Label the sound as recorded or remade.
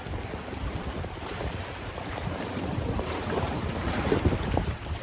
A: remade